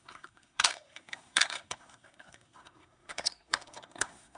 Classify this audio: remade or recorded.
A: remade